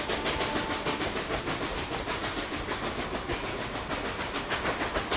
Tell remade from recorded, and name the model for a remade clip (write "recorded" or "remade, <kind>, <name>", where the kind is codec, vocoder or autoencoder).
recorded